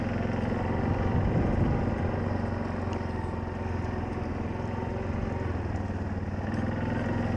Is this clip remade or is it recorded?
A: recorded